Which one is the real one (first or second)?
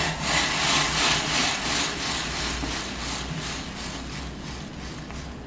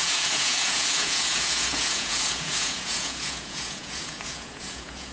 first